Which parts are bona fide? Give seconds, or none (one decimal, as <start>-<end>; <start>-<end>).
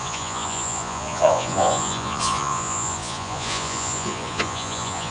none